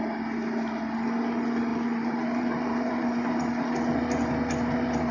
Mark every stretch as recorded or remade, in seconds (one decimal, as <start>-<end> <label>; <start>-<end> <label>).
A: 0.0-1.7 recorded; 1.7-2.9 remade; 2.9-5.1 recorded